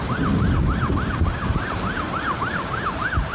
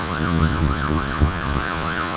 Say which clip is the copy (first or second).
second